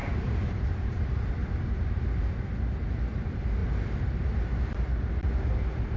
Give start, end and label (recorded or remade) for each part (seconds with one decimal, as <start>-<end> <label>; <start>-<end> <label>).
0.0-1.0 remade; 1.0-6.0 recorded